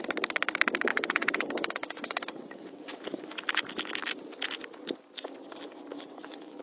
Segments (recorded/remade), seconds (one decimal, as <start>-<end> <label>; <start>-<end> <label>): 0.0-0.9 recorded; 0.9-2.8 remade; 2.8-5.9 recorded; 5.9-6.6 remade